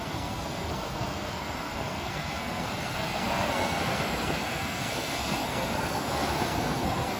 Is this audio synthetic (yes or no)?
yes